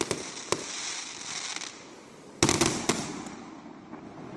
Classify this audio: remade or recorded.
recorded